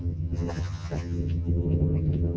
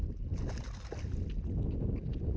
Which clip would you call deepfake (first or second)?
first